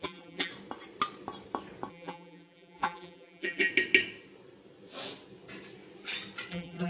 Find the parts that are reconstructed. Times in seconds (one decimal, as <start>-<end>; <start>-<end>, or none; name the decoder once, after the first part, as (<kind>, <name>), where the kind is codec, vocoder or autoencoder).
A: 0.0-0.5 (vocoder, BigVGAN v2); 1.9-3.7; 6.5-6.9